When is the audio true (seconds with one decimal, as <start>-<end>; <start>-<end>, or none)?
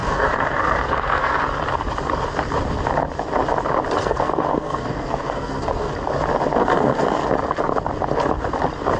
1.4-4.0; 5.9-6.6; 7.2-9.0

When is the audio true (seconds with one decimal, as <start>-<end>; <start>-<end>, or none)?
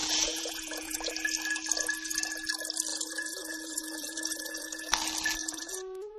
1.1-2.9; 4.9-5.4